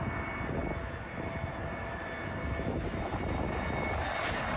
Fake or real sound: real